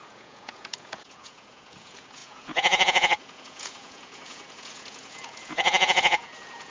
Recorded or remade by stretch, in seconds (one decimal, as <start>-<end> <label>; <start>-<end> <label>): 0.0-6.7 remade